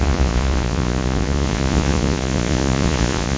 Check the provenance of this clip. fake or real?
fake